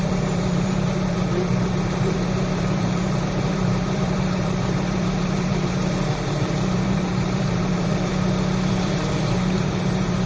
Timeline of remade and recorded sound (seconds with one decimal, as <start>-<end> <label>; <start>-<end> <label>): 0.0-8.1 remade; 8.1-8.7 recorded; 8.7-10.3 remade